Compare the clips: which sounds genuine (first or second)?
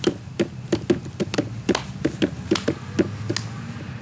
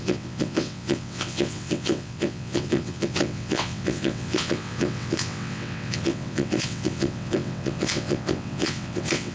first